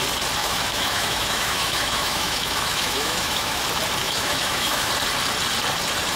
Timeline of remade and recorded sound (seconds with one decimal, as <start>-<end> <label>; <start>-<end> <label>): 0.0-0.4 recorded; 0.4-3.6 remade; 3.6-4.0 recorded; 4.0-4.9 remade; 4.9-6.2 recorded